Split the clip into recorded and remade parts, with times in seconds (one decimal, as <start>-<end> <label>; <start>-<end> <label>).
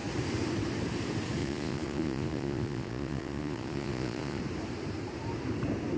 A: 0.0-1.4 recorded; 1.4-4.4 remade; 4.4-6.0 recorded